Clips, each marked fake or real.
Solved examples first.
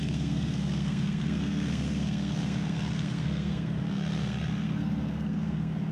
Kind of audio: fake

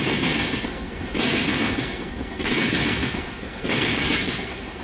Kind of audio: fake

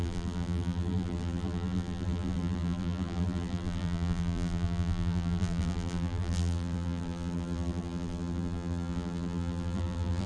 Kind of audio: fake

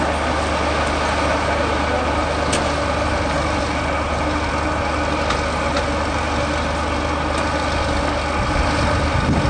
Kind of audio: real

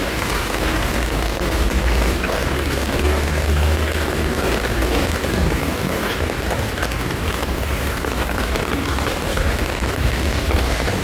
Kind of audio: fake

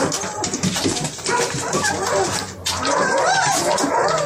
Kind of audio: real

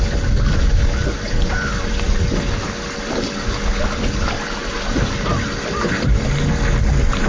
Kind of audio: real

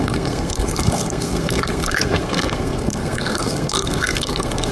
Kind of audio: fake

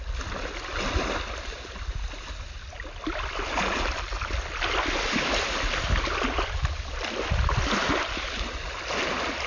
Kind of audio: real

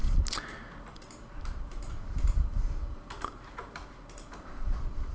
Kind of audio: real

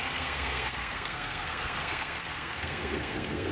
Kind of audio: fake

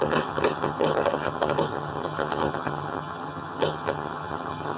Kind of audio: fake